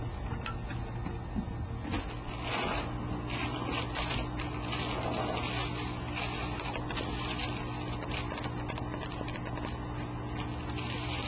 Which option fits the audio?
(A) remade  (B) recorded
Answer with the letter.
B